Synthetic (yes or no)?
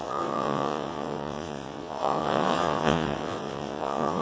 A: yes